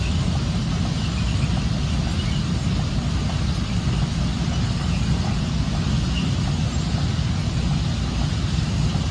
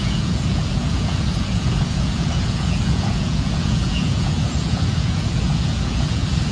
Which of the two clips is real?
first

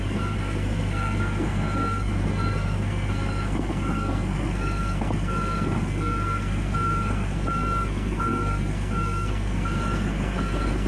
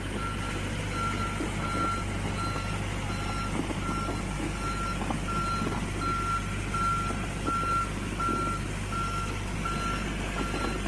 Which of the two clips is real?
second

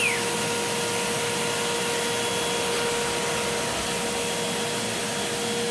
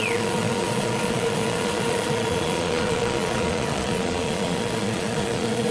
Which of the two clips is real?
first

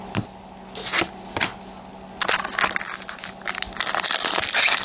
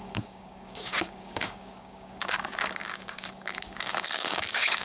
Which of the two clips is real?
first